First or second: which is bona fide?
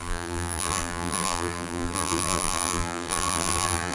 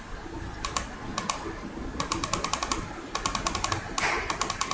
second